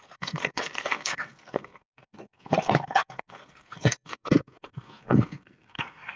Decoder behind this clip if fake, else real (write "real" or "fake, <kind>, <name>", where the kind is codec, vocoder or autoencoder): fake, codec, SNAC